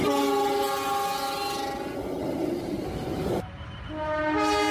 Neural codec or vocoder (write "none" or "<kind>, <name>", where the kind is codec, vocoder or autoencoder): none